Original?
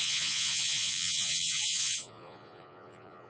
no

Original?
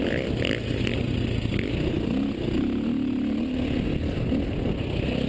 yes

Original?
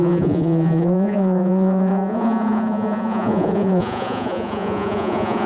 no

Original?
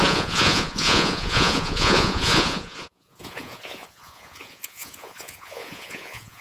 no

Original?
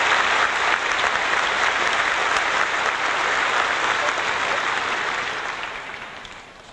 yes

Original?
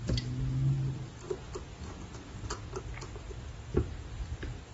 yes